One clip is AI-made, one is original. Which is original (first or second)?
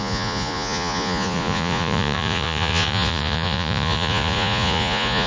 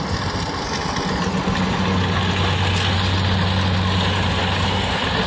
second